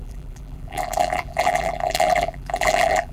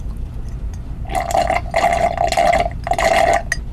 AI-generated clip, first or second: first